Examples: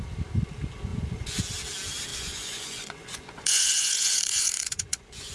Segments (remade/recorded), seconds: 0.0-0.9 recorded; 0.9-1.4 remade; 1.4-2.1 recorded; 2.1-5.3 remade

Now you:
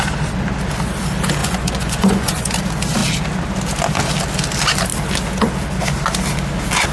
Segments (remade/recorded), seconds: 0.0-1.4 recorded; 1.4-2.5 remade; 2.5-6.9 recorded

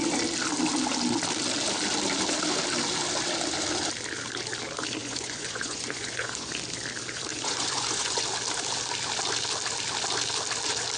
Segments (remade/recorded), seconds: 0.0-5.0 recorded; 5.0-6.5 remade; 6.5-7.3 recorded; 7.3-8.2 remade; 8.2-11.0 recorded

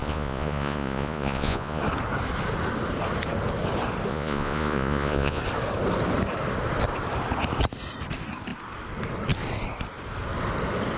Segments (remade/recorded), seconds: 0.0-1.8 remade; 1.8-4.1 recorded; 4.1-5.4 remade; 5.4-11.0 recorded

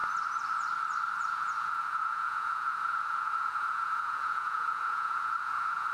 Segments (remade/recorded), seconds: 0.0-1.3 recorded; 1.3-5.9 remade